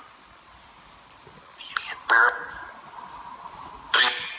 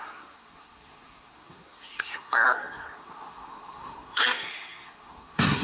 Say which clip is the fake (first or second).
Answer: second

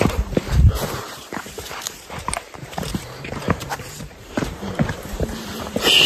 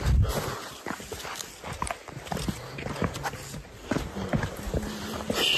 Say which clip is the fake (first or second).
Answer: first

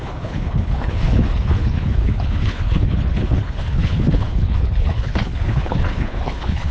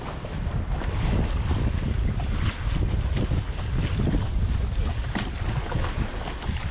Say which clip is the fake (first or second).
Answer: first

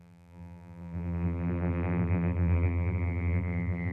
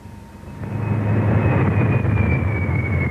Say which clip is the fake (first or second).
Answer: first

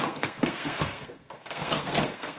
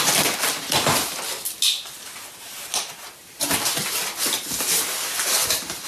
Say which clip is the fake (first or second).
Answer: first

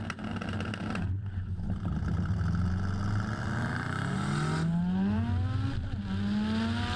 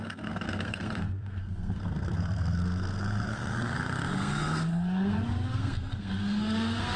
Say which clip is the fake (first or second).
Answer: second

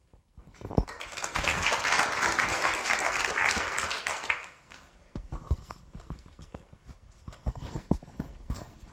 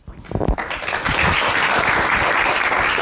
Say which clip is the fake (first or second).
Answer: first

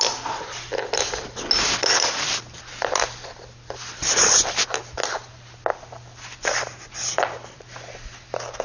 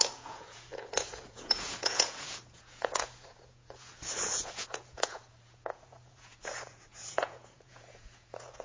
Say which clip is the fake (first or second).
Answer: second